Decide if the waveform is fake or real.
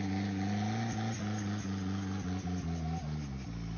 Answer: real